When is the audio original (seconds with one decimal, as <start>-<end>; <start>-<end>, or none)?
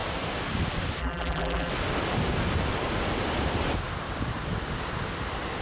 0.0-1.0; 1.7-5.6